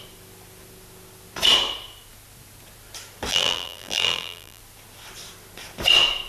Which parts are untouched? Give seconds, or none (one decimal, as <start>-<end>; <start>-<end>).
0.0-3.3; 4.6-6.3